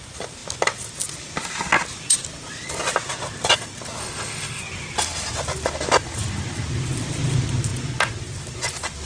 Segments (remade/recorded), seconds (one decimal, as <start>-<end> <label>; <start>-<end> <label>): 0.0-4.0 recorded; 4.0-4.6 remade; 4.6-9.1 recorded